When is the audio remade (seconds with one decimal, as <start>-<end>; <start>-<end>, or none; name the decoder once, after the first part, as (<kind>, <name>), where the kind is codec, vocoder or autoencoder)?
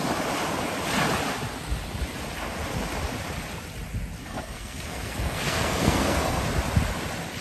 4.2-6.4 (codec, SNAC)